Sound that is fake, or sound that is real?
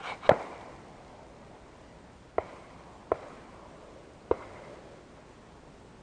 real